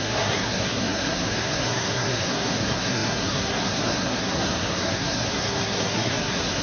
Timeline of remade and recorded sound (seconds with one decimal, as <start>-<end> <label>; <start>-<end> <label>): 0.0-6.6 remade